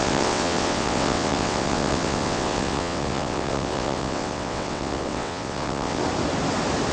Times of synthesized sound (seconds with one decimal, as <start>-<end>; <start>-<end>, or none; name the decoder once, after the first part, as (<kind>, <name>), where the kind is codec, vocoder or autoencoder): 0.0-6.0 (vocoder, WaveNeXt)